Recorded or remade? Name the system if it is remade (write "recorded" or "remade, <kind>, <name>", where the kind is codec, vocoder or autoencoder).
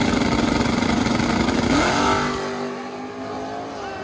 recorded